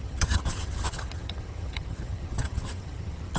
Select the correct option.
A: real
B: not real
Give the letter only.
B